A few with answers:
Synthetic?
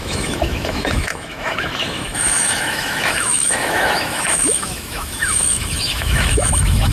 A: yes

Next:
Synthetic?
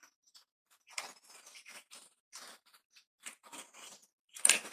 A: yes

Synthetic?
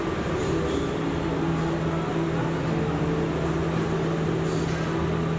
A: no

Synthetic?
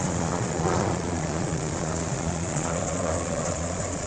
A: yes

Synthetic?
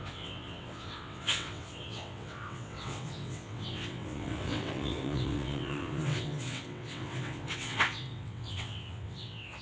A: yes